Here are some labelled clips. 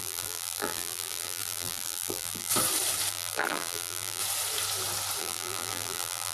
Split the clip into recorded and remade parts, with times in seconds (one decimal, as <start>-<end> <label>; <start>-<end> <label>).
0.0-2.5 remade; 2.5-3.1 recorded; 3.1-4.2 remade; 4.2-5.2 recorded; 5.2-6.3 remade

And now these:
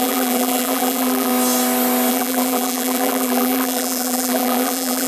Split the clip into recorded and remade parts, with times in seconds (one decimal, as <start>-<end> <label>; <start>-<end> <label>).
0.0-1.3 remade; 1.3-2.1 recorded; 2.1-5.1 remade

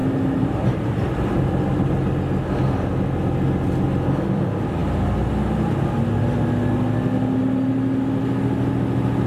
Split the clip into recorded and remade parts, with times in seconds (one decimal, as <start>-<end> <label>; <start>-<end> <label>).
0.0-1.1 remade; 1.1-9.3 recorded

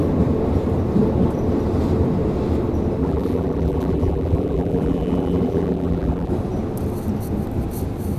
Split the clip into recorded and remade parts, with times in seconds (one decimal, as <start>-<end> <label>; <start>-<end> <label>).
0.0-3.0 recorded; 3.0-6.3 remade; 6.3-8.2 recorded

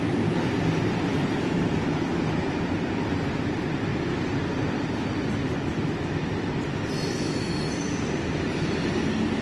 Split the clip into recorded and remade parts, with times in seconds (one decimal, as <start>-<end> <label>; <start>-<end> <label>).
0.0-9.4 remade

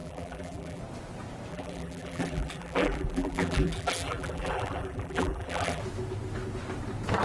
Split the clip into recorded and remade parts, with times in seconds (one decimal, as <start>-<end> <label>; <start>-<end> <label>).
0.0-0.8 remade; 0.8-1.5 recorded; 1.5-5.8 remade; 5.8-7.2 recorded

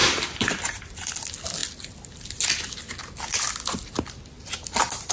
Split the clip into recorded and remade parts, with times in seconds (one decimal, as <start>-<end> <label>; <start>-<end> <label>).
0.0-1.1 remade; 1.1-5.1 recorded

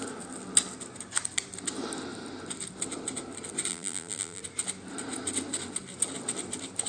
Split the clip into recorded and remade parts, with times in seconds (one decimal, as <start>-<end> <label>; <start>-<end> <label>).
0.0-3.7 recorded; 3.7-4.4 remade; 4.4-6.9 recorded